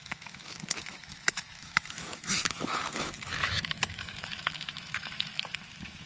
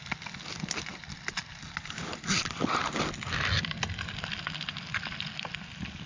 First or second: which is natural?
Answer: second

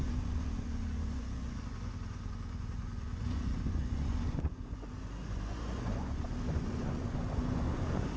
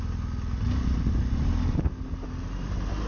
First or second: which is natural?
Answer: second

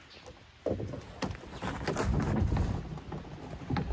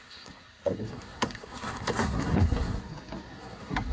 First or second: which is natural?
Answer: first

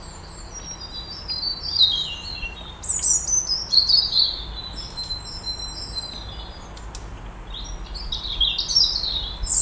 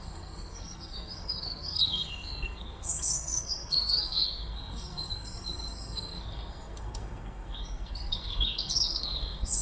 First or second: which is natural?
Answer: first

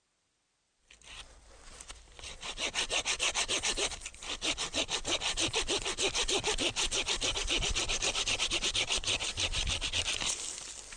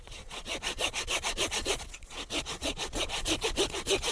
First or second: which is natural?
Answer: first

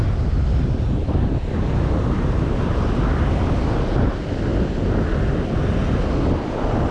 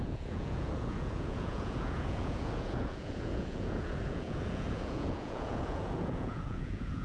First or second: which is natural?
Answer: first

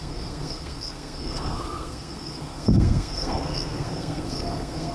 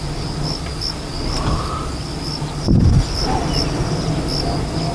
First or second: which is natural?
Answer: second